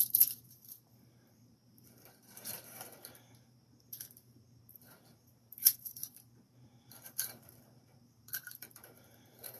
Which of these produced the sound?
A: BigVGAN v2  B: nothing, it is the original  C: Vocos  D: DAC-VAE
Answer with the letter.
A